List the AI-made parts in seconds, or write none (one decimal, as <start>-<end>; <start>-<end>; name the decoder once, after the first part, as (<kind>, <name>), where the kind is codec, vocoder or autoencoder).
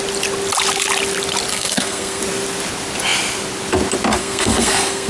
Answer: 1.5-2.2 (codec, SNAC); 4.2-5.1